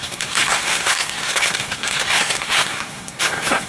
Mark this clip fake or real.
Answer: fake